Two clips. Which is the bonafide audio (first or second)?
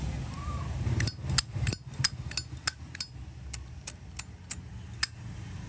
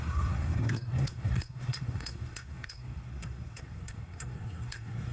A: first